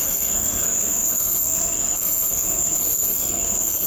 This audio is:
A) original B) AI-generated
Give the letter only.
B